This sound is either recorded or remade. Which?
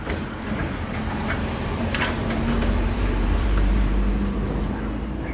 remade